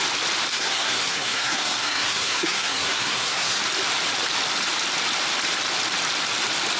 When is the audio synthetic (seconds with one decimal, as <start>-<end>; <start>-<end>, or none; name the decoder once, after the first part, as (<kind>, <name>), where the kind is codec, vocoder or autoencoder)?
0.5-3.6 (codec, SNAC)